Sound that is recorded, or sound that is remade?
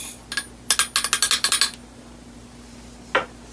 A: recorded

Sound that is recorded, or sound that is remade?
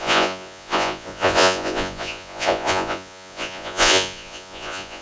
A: remade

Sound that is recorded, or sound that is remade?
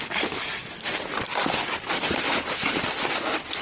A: recorded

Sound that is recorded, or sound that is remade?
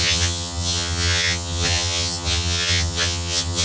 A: remade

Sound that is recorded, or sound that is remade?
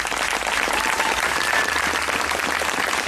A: recorded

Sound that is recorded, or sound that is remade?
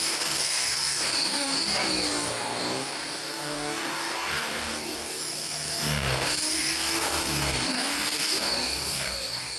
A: remade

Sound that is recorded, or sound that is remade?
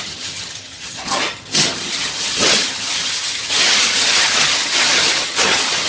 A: remade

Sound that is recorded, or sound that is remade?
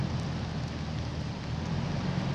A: recorded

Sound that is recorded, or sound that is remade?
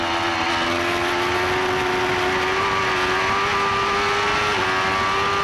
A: recorded